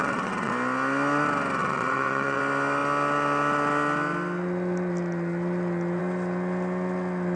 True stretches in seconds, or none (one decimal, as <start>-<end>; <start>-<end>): 0.5-1.6; 2.4-7.4